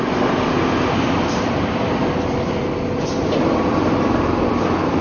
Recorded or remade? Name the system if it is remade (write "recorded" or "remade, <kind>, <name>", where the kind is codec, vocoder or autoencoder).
remade, vocoder, BigVGAN v2